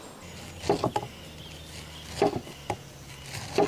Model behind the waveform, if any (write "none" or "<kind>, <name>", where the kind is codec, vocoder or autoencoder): none